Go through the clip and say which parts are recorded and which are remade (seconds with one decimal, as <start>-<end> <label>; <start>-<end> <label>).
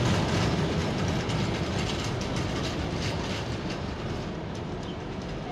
0.0-5.5 recorded